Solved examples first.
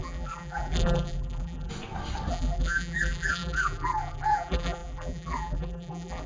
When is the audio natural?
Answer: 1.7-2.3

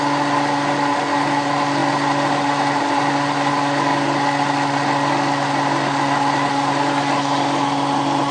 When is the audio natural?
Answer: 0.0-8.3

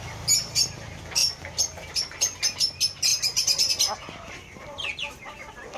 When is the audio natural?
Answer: 0.0-3.1; 3.7-5.8

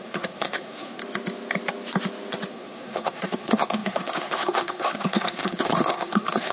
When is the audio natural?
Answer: 1.0-2.5

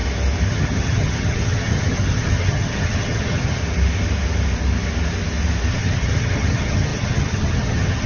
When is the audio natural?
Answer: 0.0-0.5; 3.6-5.7